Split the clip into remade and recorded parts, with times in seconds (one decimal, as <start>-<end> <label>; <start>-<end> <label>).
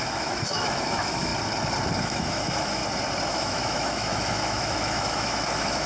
0.0-1.3 remade; 1.3-2.0 recorded; 2.0-2.8 remade; 2.8-3.3 recorded; 3.3-5.9 remade